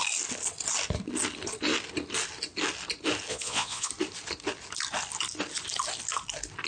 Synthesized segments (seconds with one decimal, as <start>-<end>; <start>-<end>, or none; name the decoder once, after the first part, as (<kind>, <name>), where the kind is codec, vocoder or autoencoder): 3.3-3.9 (vocoder, Vocos)